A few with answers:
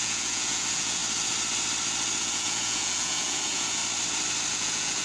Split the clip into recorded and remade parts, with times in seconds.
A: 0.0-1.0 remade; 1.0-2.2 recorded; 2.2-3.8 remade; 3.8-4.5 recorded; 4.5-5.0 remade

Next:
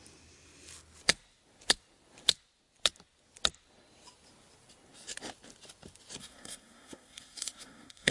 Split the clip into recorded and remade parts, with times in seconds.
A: 0.0-6.2 recorded; 6.2-8.1 remade

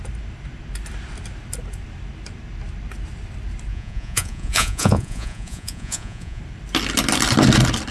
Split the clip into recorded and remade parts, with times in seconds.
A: 0.0-3.7 recorded; 3.7-6.4 remade; 6.4-7.9 recorded

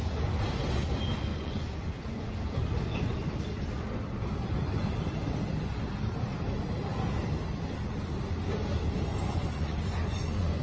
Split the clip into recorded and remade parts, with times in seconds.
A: 0.0-1.3 recorded; 1.3-2.3 remade; 2.3-9.1 recorded; 9.1-10.6 remade